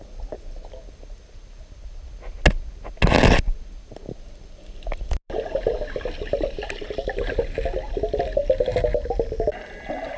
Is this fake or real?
real